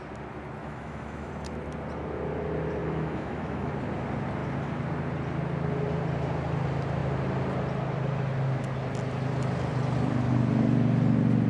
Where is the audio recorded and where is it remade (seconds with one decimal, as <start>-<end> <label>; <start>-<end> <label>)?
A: 0.0-0.6 recorded; 0.6-1.3 remade; 1.3-2.8 recorded; 2.8-3.7 remade; 3.7-11.5 recorded